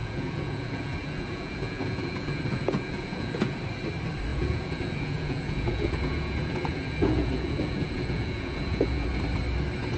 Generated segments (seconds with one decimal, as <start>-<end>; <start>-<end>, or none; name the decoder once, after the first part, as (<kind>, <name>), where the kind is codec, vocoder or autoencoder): 0.0-3.6 (vocoder, Vocos); 4.3-9.2